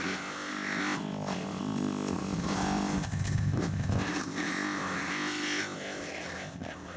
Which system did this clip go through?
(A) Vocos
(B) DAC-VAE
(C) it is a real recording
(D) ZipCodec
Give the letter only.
D